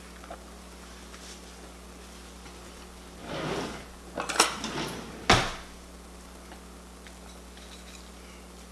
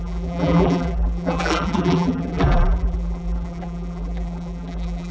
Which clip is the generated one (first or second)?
second